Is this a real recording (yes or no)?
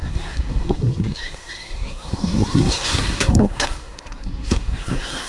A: no